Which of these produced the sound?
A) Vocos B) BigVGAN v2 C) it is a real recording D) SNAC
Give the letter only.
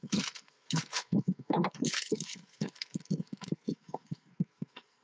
D